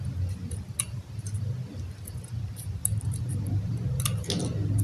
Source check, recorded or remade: recorded